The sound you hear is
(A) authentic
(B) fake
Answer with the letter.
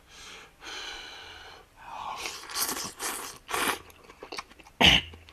A